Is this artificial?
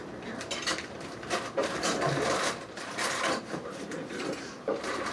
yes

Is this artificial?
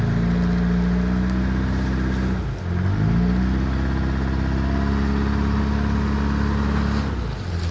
no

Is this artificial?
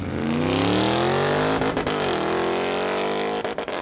no